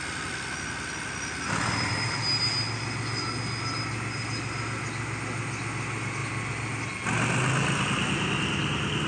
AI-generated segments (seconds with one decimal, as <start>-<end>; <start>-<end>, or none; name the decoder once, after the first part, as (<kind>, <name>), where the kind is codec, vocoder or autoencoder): none